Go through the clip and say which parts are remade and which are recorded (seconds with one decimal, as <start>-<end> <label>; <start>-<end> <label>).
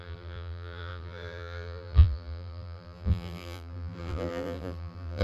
0.0-5.2 remade